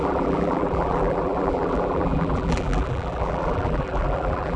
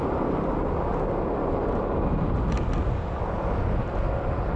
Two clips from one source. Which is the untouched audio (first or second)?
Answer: second